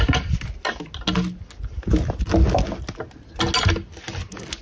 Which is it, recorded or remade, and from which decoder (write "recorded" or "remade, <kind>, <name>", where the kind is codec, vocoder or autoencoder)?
recorded